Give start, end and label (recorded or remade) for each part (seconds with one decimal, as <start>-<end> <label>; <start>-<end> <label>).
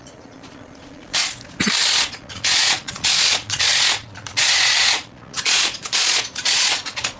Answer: 0.0-1.2 remade; 1.2-1.9 recorded; 1.9-7.2 remade